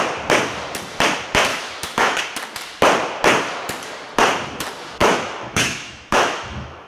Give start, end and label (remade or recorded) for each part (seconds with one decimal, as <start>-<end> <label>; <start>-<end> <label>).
0.0-1.5 recorded; 1.5-2.2 remade; 2.2-5.0 recorded; 5.0-6.9 remade